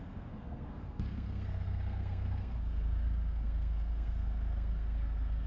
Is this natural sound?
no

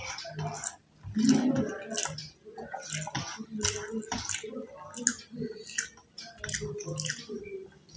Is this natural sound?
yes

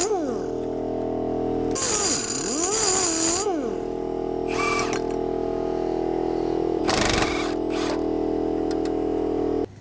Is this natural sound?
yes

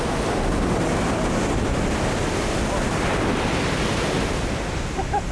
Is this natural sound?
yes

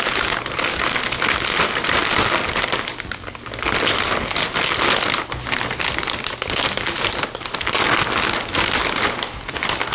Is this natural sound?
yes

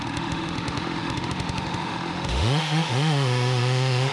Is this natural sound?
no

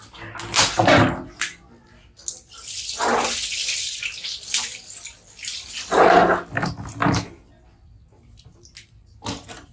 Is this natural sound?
yes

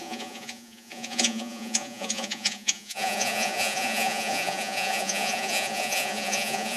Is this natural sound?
no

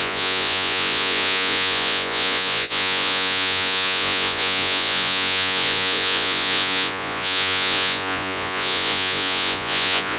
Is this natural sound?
no